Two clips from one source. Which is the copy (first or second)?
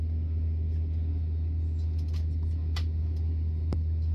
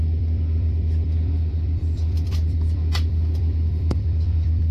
second